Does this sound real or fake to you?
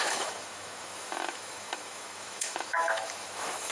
fake